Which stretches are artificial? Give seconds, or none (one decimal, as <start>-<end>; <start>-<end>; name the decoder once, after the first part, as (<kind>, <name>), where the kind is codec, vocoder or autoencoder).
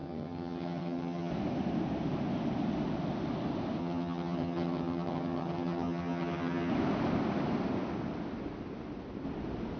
0.0-1.3 (vocoder, HiFi-GAN); 3.8-6.7